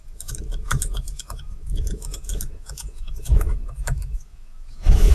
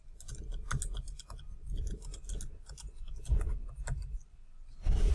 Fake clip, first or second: first